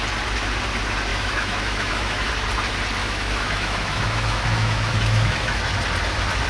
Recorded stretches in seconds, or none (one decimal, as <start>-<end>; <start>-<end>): 0.0-1.1; 2.3-3.0; 5.6-6.5